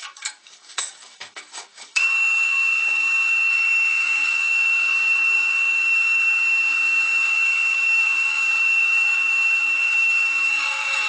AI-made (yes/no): yes